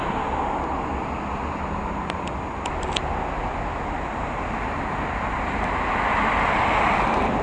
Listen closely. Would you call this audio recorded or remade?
recorded